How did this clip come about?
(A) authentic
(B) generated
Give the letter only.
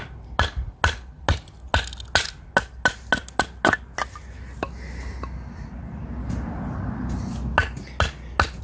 A